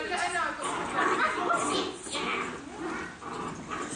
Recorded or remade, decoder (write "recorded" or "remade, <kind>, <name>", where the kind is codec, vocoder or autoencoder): recorded